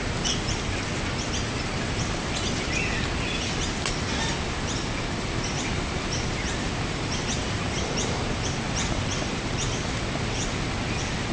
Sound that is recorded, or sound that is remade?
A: recorded